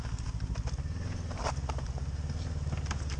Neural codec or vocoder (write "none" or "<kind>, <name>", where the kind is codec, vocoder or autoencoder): none